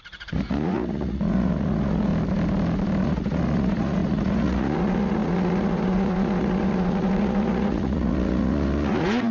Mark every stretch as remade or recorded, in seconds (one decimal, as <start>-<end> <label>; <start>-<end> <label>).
0.0-2.1 remade; 2.1-3.0 recorded; 3.0-9.3 remade